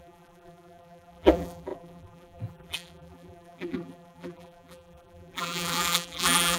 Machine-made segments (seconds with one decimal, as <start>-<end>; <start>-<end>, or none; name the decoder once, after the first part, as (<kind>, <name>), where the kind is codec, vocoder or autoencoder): 0.0-6.6 (vocoder, BigVGAN v2)